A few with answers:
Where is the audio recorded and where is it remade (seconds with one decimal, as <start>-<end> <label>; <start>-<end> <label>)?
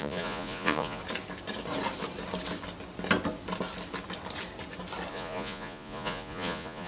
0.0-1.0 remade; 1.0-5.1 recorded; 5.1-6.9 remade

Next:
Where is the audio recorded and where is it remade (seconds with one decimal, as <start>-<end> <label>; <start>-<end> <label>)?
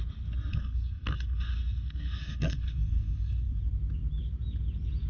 0.0-0.5 recorded; 0.5-3.6 remade; 3.6-5.1 recorded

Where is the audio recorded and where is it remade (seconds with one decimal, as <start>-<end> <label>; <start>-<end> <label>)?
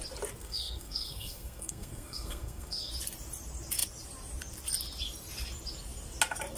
0.0-0.4 recorded; 0.4-2.9 remade; 2.9-6.6 recorded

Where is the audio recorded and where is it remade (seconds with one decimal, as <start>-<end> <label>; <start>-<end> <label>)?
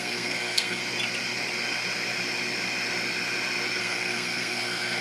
0.0-0.8 remade; 0.8-3.8 recorded; 3.8-5.0 remade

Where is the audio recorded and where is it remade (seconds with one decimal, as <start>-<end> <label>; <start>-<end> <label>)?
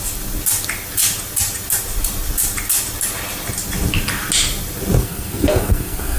0.0-5.0 recorded; 5.0-6.2 remade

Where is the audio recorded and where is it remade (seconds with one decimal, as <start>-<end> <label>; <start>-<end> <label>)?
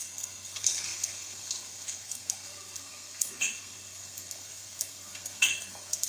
0.0-6.1 remade